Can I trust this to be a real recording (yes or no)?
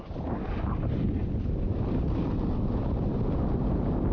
yes